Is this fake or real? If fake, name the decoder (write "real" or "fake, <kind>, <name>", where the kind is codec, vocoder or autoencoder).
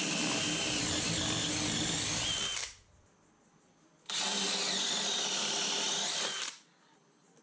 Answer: real